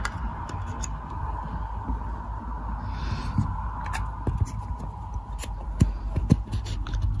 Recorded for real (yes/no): yes